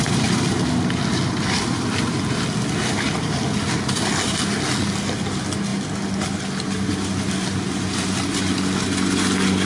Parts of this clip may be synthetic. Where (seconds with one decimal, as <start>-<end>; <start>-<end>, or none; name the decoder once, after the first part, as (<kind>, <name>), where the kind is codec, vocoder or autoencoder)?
none